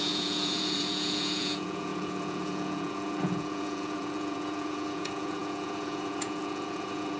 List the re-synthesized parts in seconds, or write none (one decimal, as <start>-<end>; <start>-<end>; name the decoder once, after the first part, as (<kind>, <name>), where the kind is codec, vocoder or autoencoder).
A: 0.0-7.2 (vocoder, Vocos)